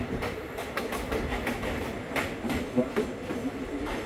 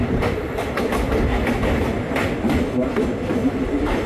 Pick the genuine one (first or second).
first